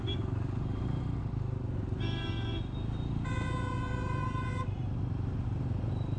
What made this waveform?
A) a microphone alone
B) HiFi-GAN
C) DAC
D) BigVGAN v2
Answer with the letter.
A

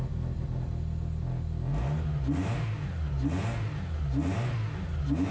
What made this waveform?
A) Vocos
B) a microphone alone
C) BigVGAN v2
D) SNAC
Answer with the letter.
B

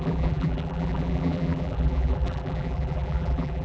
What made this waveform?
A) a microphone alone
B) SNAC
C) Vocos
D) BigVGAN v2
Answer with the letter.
D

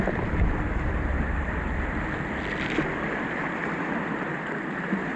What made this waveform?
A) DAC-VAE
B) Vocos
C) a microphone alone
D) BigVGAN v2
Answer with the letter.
D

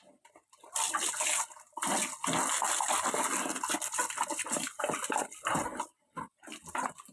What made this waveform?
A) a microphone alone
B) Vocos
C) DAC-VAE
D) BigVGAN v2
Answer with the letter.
A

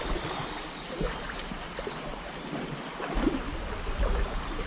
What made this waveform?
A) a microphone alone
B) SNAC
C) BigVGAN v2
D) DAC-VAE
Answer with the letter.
A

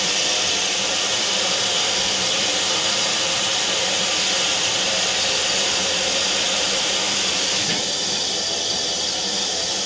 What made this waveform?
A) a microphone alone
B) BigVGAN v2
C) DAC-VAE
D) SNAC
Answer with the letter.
B